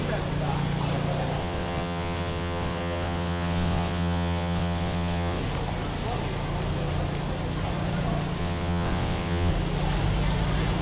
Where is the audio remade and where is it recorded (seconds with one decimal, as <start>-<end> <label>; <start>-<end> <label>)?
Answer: 0.0-1.4 recorded; 1.4-5.4 remade; 5.4-8.4 recorded; 8.4-9.5 remade; 9.5-10.8 recorded

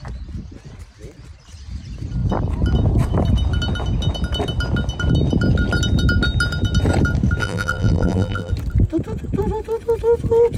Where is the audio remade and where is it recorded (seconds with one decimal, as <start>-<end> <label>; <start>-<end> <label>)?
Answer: 0.0-7.4 recorded; 7.4-8.5 remade; 8.5-10.6 recorded

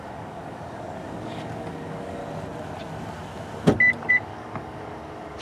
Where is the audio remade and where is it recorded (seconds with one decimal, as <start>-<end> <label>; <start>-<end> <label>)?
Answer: 0.0-2.2 remade; 2.2-4.1 recorded; 4.1-5.4 remade

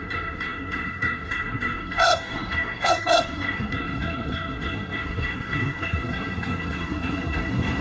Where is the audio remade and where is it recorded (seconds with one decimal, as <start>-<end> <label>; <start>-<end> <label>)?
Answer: 0.0-7.8 remade

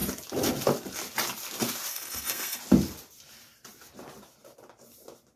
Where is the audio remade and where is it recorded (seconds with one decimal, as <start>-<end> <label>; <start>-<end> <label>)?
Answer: 0.0-1.9 recorded; 1.9-2.6 remade; 2.6-5.4 recorded